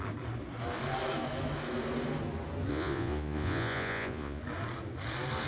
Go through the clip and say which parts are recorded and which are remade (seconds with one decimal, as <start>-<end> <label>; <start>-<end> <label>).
0.0-2.7 recorded; 2.7-4.4 remade; 4.4-5.5 recorded

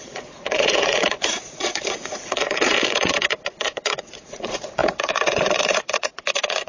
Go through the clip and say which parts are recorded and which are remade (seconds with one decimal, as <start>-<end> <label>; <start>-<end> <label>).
0.0-6.7 remade

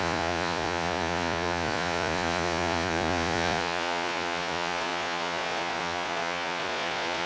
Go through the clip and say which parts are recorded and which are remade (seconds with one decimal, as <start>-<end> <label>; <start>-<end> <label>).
0.0-7.3 remade

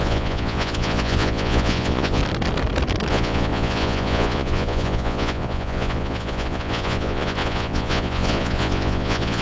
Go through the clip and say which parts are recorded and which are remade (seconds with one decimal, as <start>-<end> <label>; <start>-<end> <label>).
0.0-2.2 remade; 2.2-3.1 recorded; 3.1-9.4 remade

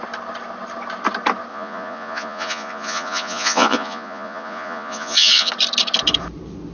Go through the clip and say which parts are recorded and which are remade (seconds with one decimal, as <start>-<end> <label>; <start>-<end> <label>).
0.0-1.5 recorded; 1.5-5.5 remade; 5.5-6.7 recorded